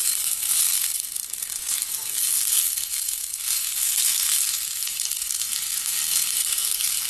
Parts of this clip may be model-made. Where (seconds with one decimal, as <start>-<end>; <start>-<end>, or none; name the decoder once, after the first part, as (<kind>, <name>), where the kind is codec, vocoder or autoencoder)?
0.0-7.1 (codec, SNAC)